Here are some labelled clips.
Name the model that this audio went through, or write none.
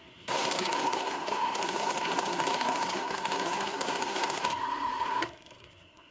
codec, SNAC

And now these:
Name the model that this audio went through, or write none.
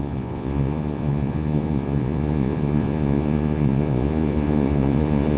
vocoder, Vocos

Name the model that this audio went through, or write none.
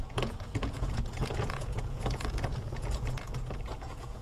vocoder, Vocos